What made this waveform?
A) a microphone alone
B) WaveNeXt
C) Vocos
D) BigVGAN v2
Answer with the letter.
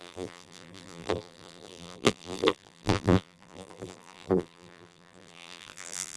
D